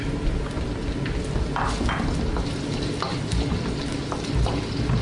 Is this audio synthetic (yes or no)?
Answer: no